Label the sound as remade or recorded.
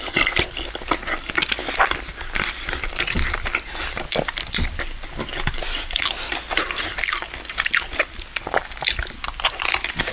recorded